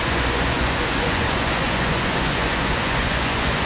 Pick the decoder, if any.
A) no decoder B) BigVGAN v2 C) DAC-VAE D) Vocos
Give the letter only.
D